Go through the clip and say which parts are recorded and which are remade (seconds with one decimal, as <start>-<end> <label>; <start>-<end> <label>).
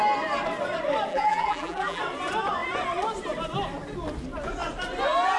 0.0-1.1 recorded; 1.1-2.0 remade; 2.0-5.4 recorded